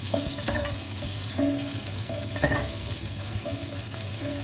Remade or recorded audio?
remade